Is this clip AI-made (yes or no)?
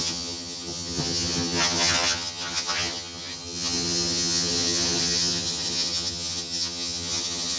yes